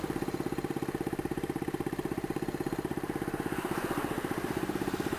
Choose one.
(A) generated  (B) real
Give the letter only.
A